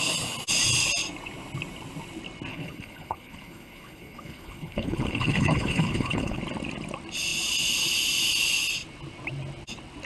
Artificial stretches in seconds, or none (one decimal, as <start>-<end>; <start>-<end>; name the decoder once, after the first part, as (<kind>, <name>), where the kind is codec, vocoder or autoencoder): 2.5-6.4 (codec, HILCodec)

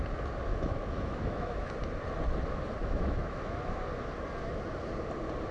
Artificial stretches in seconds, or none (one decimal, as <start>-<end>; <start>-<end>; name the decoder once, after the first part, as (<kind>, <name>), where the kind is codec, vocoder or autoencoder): 0.5-1.7 (autoencoder, DAC-VAE); 2.8-3.8

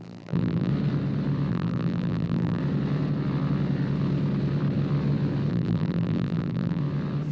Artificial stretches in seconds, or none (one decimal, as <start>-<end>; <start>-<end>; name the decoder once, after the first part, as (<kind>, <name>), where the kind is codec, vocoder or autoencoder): 0.0-0.7 (vocoder, BigVGAN v2); 1.5-2.6; 5.5-6.8

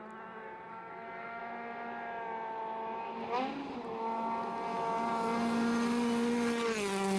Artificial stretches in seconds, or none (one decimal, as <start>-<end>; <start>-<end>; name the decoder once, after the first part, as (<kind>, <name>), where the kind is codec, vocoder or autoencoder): 0.7-1.4 (codec, SNAC)

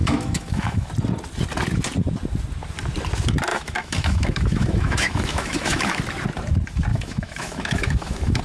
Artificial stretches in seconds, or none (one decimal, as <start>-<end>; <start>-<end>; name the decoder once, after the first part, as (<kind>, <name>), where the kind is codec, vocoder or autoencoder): 0.0-0.9 (autoencoder, DAC-VAE); 3.5-6.0; 6.9-8.4

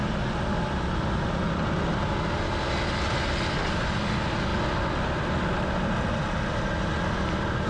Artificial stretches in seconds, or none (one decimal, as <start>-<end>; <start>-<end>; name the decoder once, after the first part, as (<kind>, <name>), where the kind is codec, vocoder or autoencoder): none

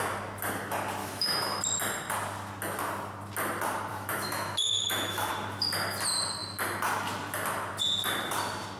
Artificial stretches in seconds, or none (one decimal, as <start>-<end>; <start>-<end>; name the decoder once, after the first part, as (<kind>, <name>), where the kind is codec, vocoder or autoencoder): 1.0-1.6 (autoencoder, DAC-VAE); 3.9-5.3

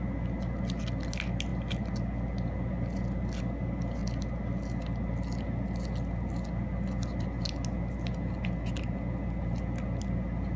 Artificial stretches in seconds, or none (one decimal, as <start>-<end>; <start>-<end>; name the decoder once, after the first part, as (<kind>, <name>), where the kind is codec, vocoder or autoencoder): none